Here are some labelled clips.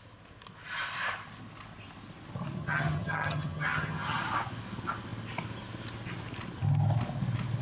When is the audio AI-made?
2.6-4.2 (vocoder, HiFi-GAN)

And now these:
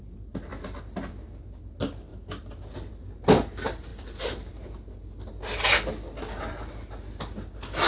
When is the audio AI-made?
none

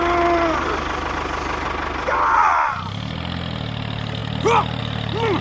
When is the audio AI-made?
none